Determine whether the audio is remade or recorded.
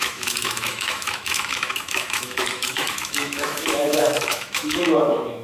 remade